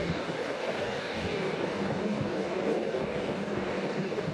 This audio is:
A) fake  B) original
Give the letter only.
A